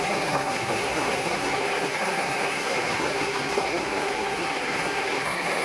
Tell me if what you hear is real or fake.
fake